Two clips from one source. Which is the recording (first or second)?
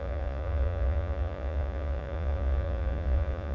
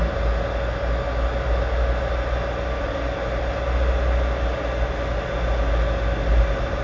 second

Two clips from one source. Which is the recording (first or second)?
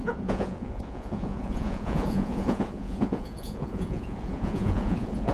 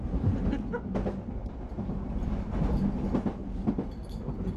second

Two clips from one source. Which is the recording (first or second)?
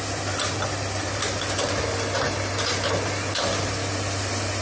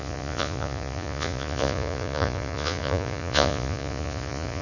first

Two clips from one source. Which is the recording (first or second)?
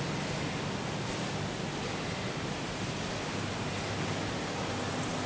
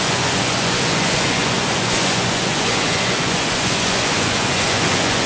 first